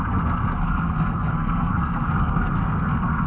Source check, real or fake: fake